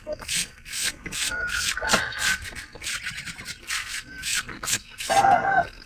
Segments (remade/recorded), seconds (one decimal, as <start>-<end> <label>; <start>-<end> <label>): 0.0-2.9 remade; 2.9-3.6 recorded; 3.6-5.9 remade